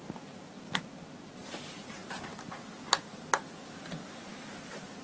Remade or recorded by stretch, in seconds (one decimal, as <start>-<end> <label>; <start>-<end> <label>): 0.0-5.0 recorded